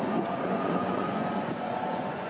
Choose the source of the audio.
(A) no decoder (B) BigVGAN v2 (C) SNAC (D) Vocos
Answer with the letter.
D